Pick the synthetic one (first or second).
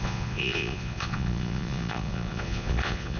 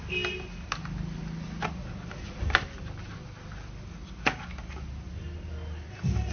first